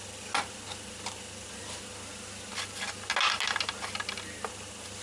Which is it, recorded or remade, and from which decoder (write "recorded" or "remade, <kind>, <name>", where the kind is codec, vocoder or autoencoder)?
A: recorded